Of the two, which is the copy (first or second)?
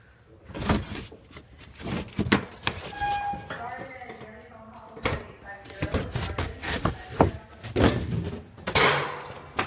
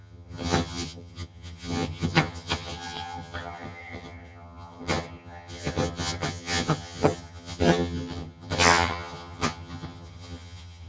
second